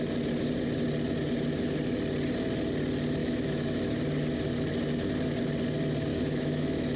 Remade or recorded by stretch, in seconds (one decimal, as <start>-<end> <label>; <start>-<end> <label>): 0.0-3.2 recorded; 3.2-3.9 remade; 3.9-6.1 recorded; 6.1-7.0 remade

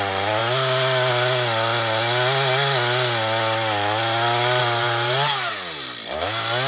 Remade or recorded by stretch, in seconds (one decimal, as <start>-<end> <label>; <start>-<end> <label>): 0.0-4.6 recorded; 4.6-5.5 remade; 5.5-6.7 recorded

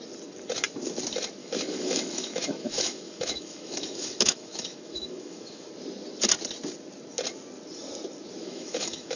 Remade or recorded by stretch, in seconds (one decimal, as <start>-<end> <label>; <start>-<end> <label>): 0.0-1.4 recorded; 1.4-5.7 remade; 5.7-8.4 recorded; 8.4-9.2 remade

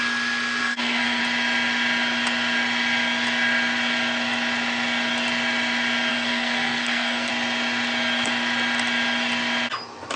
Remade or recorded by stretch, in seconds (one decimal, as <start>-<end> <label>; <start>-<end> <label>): 0.0-0.6 recorded; 0.6-1.2 remade; 1.2-6.1 recorded; 6.1-7.3 remade; 7.3-10.2 recorded